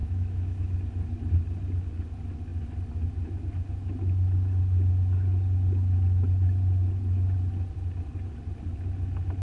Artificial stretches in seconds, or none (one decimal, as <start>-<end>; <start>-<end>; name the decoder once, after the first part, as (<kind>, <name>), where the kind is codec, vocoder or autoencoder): 0.0-0.7 (autoencoder, DAC-VAE)